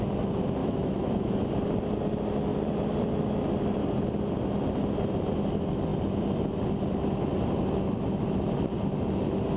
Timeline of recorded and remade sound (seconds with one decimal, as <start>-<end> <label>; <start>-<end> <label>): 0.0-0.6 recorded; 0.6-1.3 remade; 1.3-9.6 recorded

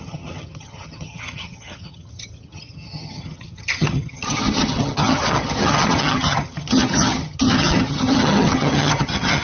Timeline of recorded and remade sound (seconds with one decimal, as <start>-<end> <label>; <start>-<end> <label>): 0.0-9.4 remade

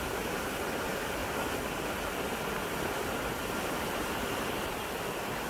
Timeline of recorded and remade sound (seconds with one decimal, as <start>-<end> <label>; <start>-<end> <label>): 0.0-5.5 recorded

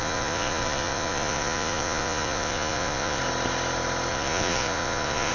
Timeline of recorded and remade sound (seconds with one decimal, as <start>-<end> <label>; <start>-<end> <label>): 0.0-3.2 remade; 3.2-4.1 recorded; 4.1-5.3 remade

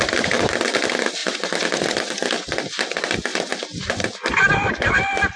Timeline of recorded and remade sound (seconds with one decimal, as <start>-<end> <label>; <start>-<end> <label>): 0.0-5.4 recorded

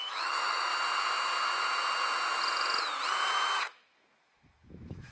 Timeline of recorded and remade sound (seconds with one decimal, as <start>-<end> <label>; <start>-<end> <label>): 0.0-0.7 remade; 0.7-3.6 recorded; 3.6-5.1 remade

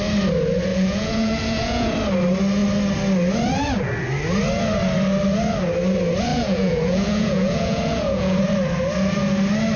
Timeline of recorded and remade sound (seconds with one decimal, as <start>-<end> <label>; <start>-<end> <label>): 0.0-0.7 recorded; 0.7-1.9 remade; 1.9-6.3 recorded; 6.3-8.4 remade; 8.4-9.8 recorded